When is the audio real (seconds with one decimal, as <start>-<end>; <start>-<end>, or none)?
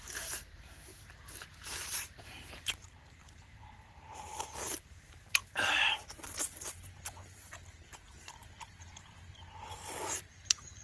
5.4-10.3